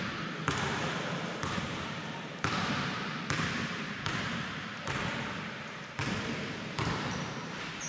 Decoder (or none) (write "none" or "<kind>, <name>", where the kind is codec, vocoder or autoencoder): vocoder, BigVGAN v2